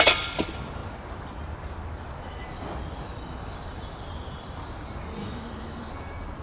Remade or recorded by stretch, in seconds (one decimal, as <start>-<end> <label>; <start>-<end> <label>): 0.0-5.2 recorded; 5.2-5.9 remade; 5.9-6.4 recorded